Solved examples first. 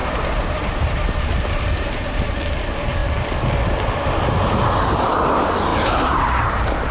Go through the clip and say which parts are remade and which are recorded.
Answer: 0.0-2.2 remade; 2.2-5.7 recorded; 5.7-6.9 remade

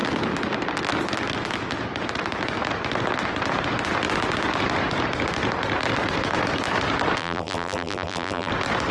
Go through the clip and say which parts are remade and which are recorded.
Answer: 0.0-7.2 recorded; 7.2-8.5 remade; 8.5-8.9 recorded

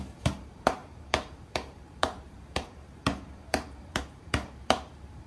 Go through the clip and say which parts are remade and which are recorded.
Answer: 0.0-5.3 remade

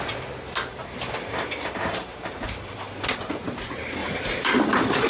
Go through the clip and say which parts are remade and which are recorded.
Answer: 0.0-0.7 recorded; 0.7-2.9 remade; 2.9-4.0 recorded; 4.0-5.1 remade

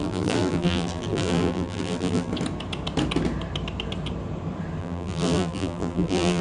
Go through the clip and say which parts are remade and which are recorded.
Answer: 0.0-2.3 remade; 2.3-4.8 recorded; 4.8-6.4 remade